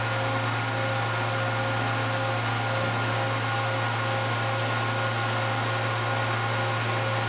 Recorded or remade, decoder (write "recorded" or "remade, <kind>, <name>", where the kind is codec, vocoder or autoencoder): recorded